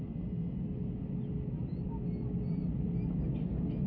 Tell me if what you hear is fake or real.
real